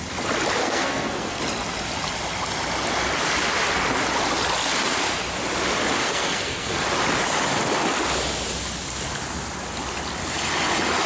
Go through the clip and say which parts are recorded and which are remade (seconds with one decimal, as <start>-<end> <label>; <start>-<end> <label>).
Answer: 0.0-0.6 recorded; 0.6-1.4 remade; 1.4-6.0 recorded; 6.0-6.8 remade; 6.8-11.1 recorded